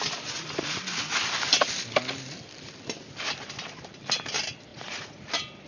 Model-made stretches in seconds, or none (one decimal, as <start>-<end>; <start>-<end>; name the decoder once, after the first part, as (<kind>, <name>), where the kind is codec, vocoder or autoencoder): 4.7-5.3 (vocoder, Vocos)